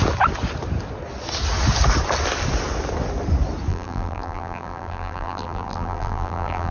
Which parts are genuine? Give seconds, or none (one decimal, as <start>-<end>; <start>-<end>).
0.0-3.7